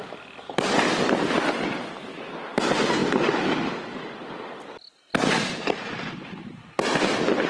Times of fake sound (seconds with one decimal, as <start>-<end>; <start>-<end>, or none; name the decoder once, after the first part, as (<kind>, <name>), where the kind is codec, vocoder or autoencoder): 2.1-2.6 (autoencoder, DAC-VAE)

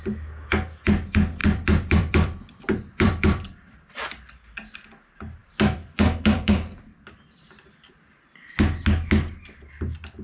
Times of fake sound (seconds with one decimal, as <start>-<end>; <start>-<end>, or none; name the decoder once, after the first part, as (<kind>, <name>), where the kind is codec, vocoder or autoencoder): 1.4-4.0 (vocoder, BigVGAN v2); 5.4-7.9

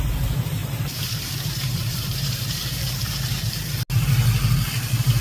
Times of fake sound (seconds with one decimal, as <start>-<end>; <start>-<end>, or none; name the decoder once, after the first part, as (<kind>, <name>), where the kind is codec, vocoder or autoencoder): 0.6-3.7 (vocoder, BigVGAN v2)

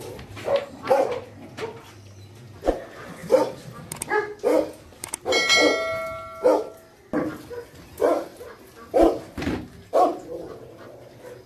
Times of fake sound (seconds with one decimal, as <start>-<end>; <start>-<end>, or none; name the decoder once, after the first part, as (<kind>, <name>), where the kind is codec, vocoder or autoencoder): none

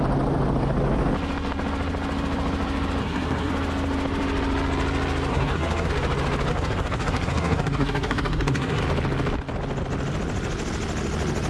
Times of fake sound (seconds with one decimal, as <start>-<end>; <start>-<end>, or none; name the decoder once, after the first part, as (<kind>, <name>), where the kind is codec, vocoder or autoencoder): 3.0-3.5 (codec, SNAC); 5.3-5.9; 6.5-8.8

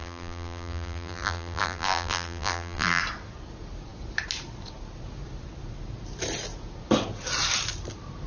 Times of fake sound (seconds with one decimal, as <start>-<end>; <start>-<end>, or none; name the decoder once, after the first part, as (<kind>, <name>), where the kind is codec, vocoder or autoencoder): 0.0-3.0 (vocoder, BigVGAN v2)

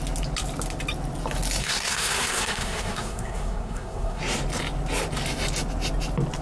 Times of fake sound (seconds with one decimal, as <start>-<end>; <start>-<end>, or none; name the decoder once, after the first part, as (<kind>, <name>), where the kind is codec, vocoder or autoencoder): 1.6-4.2 (codec, SNAC)